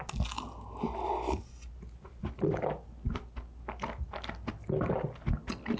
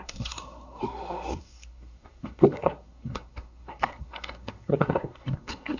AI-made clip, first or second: second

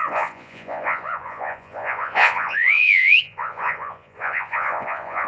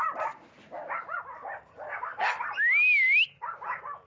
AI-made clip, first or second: first